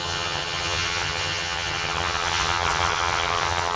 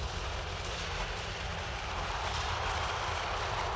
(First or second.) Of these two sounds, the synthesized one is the first